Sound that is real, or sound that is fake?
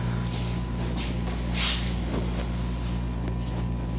real